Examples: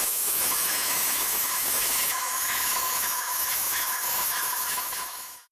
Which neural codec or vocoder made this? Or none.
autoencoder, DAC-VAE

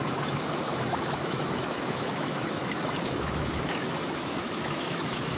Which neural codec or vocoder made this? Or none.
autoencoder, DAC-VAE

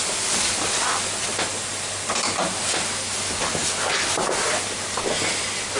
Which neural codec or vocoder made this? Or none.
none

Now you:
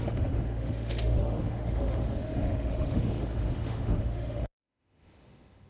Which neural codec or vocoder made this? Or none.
autoencoder, DAC-VAE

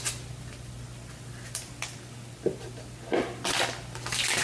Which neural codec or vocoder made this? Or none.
none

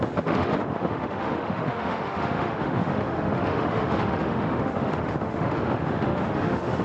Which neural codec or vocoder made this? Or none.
autoencoder, DAC-VAE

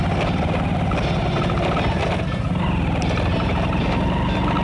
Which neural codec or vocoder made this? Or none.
none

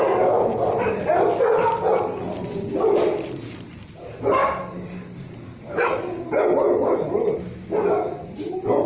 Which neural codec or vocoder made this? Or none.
none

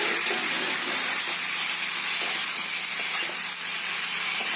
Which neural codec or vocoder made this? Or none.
none